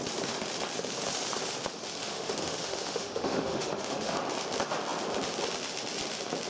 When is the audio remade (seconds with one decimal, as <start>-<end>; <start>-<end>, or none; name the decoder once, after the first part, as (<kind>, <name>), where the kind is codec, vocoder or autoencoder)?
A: 2.0-4.2 (autoencoder, DAC-VAE)